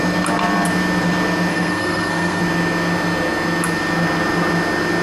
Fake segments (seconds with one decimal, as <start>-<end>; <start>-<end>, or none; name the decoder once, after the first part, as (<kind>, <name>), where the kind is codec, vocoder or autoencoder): 1.5-2.4 (codec, SNAC)